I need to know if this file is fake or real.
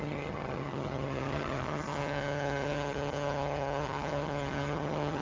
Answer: fake